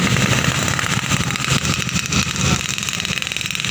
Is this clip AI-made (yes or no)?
yes